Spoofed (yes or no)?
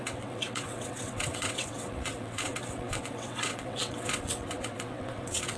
yes